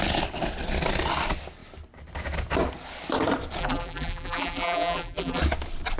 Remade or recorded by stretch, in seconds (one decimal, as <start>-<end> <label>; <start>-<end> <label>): 0.0-3.6 recorded; 3.6-5.4 remade; 5.4-6.0 recorded